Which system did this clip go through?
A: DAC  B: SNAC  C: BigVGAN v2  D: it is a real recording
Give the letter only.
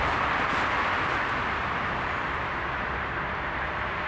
C